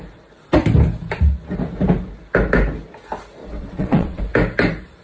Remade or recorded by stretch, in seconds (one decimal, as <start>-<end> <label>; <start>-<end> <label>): 0.0-3.4 recorded; 3.4-4.2 remade; 4.2-5.0 recorded